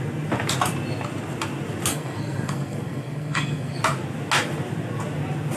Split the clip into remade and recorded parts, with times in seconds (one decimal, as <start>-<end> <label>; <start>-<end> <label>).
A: 0.0-1.9 recorded; 1.9-3.8 remade; 3.8-5.6 recorded